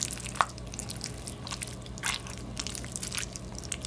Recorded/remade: recorded